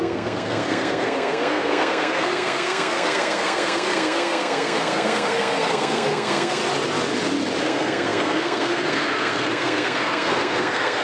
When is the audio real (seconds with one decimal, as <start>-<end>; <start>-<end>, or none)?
6.6-7.6